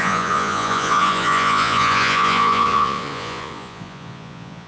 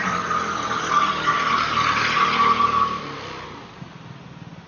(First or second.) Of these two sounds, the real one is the second